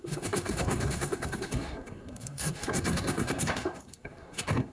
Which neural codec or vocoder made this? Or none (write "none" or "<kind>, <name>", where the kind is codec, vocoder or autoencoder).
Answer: codec, SNAC